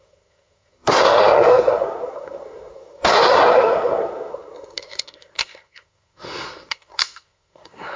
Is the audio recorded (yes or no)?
no